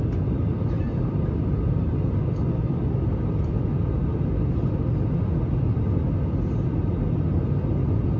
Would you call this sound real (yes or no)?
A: yes